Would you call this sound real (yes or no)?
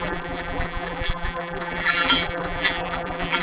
no